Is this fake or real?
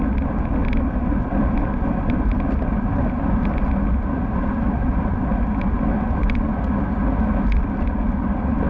real